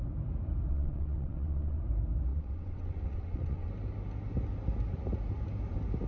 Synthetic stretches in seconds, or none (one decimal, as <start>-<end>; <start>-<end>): 0.7-1.8; 2.3-3.7